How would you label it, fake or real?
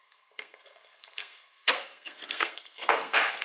fake